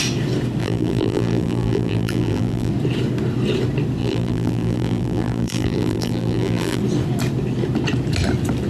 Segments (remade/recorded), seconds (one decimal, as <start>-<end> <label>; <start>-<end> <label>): 0.0-0.6 recorded; 0.6-2.7 remade; 2.7-4.0 recorded; 4.0-6.8 remade; 6.8-8.7 recorded